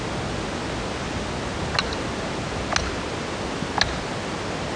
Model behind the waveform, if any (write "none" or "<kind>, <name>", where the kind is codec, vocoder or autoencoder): none